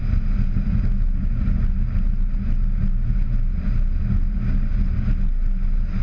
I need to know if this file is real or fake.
real